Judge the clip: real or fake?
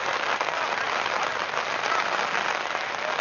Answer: real